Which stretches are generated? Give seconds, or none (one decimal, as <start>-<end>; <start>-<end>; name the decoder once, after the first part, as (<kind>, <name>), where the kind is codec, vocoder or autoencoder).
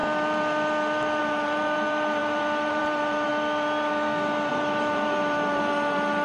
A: 1.2-3.3 (vocoder, BigVGAN v2); 4.5-6.2